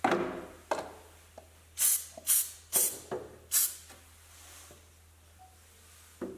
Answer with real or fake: real